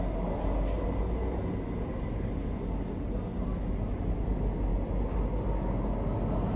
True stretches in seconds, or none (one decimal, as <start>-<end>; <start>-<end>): 0.0-6.6